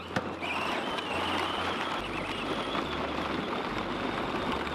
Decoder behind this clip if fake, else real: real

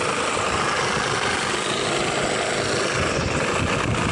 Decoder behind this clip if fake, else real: real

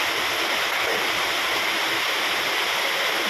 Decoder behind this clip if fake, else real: real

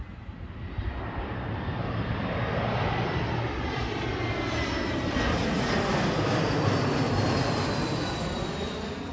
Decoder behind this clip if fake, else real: real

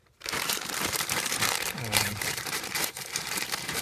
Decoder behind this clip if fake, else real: fake, vocoder, BigVGAN v2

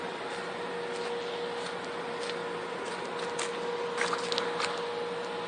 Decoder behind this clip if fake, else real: real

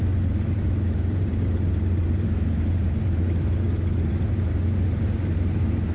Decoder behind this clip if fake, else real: fake, vocoder, BigVGAN v2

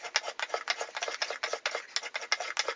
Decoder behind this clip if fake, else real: real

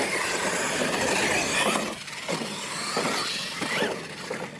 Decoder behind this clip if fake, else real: real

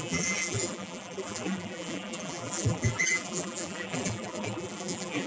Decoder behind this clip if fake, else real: fake, vocoder, BigVGAN v2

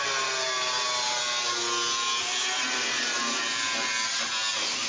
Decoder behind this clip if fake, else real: real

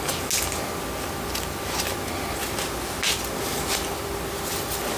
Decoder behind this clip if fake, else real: real